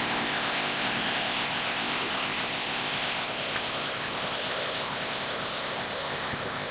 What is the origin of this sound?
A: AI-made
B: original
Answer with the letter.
A